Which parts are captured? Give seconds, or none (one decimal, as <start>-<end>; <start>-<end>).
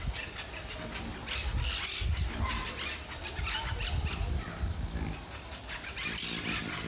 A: 0.0-6.9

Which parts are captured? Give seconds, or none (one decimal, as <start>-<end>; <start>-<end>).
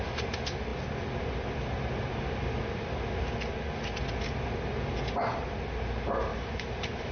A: 0.0-6.3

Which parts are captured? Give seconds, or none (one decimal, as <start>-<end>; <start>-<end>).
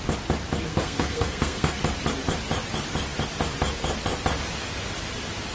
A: 0.0-0.7; 1.8-5.5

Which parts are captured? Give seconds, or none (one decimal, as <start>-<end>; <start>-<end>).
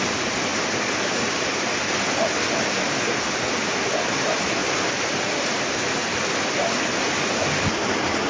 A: 0.0-0.5; 1.2-4.6; 7.3-8.3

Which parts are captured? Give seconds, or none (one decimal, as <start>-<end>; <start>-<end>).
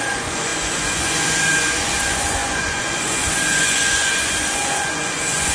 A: none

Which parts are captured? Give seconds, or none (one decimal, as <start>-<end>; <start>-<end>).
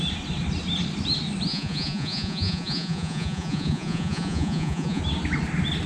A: 0.0-1.5; 5.0-5.9